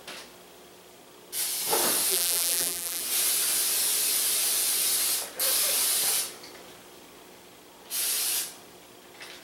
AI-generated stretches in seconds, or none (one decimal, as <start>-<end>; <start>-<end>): 2.1-3.0